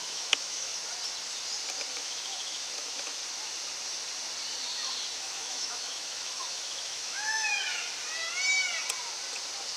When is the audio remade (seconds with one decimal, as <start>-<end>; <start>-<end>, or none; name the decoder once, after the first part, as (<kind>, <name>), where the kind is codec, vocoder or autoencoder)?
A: 0.0-0.7 (autoencoder, DAC-VAE); 1.9-3.2; 5.2-7.8